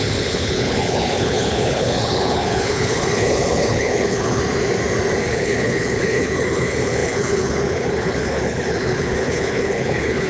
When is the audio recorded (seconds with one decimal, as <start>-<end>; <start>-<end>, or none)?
4.4-5.3